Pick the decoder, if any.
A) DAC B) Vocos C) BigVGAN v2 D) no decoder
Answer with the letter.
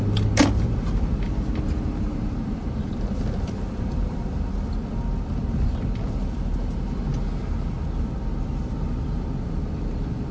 D